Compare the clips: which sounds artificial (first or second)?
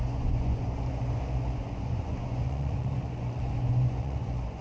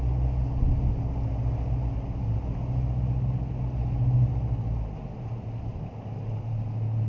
first